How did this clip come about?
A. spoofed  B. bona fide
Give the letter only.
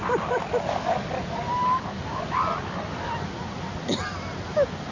B